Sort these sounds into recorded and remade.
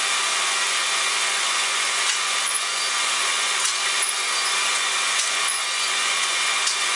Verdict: remade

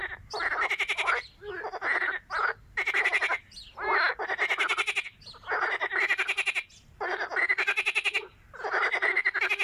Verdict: recorded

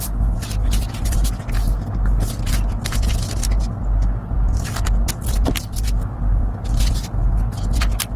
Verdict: recorded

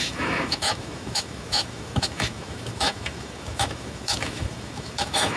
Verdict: remade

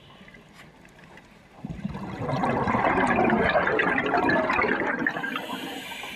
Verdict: remade